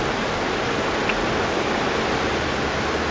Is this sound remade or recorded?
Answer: recorded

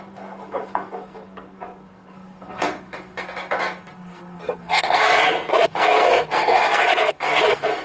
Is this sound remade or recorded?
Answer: remade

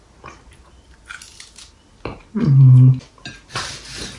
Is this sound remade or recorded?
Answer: recorded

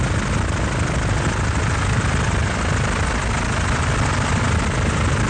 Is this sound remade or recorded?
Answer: recorded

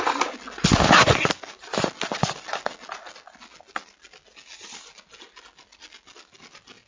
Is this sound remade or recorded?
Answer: recorded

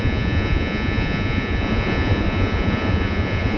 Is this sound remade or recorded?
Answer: remade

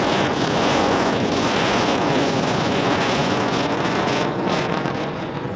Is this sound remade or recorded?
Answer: remade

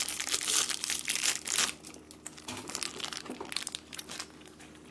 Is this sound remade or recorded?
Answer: recorded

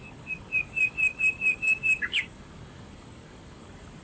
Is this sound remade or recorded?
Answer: remade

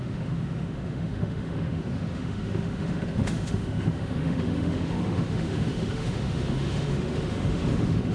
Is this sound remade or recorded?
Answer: remade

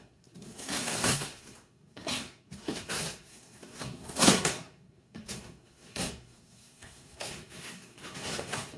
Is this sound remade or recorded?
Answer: remade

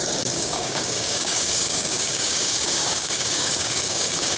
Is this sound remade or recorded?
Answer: remade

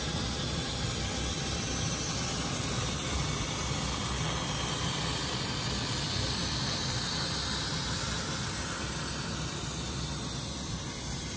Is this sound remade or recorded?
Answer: remade